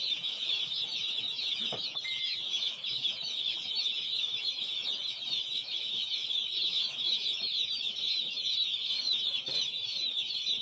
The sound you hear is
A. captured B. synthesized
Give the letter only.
B